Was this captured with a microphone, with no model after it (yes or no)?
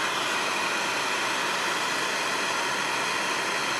yes